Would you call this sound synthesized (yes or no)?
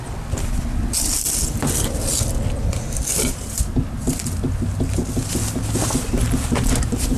no